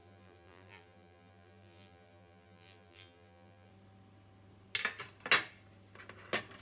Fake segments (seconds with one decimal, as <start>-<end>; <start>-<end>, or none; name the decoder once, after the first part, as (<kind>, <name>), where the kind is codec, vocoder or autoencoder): 0.0-3.7 (vocoder, BigVGAN v2)